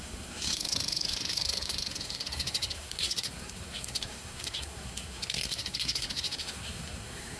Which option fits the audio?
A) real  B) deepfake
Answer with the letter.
B